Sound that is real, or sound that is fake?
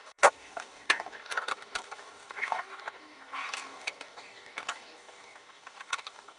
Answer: fake